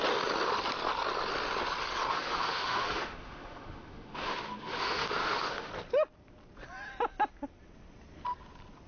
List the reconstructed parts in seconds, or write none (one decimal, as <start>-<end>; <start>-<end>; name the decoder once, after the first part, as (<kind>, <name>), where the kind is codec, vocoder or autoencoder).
2.1-5.7 (autoencoder, DAC-VAE)

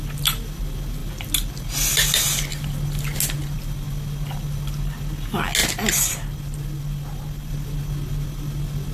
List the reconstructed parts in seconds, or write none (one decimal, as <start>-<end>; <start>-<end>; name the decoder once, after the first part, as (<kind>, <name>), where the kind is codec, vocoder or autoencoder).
none

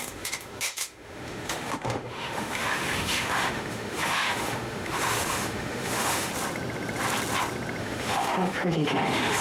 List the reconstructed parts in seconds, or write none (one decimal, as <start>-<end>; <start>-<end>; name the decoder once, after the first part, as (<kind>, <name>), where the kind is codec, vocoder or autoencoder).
0.0-6.3 (autoencoder, DAC-VAE); 7.8-9.4